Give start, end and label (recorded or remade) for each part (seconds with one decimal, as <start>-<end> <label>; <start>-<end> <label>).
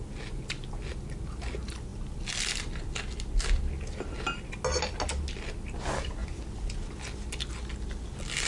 0.0-8.5 recorded